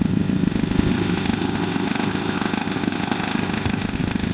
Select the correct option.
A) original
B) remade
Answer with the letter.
B